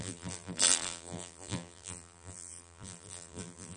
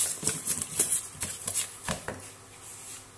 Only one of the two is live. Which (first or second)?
second